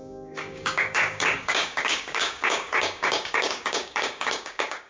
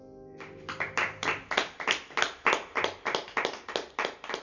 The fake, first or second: first